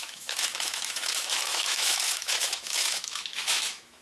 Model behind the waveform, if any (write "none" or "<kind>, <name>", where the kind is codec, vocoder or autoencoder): autoencoder, DAC-VAE